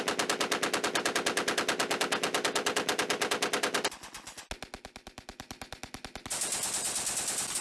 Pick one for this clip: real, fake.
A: real